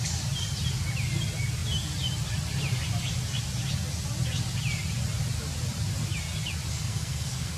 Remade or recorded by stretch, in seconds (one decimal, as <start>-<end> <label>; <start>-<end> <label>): 0.0-6.7 recorded; 6.7-7.6 remade